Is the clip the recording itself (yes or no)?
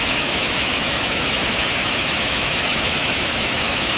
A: no